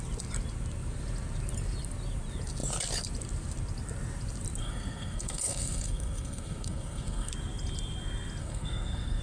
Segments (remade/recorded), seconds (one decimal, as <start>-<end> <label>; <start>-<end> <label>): 0.0-4.6 recorded; 4.6-7.3 remade; 7.3-8.4 recorded; 8.4-9.2 remade